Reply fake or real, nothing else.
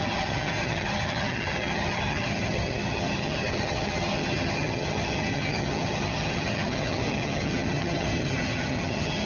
fake